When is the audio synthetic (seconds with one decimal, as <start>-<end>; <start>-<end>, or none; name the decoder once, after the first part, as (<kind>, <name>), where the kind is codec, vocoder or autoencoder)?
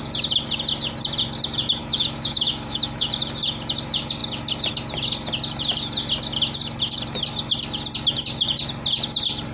1.8-3.1 (autoencoder, DAC-VAE)